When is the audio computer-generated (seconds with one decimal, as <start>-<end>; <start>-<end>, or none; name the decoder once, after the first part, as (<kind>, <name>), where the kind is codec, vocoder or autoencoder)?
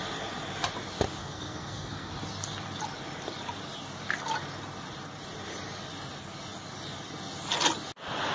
1.2-2.1 (codec, SNAC)